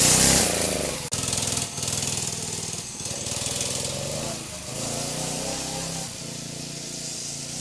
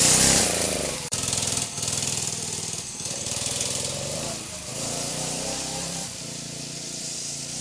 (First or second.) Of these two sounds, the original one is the first